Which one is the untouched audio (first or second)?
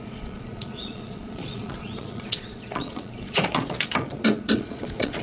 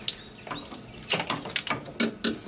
second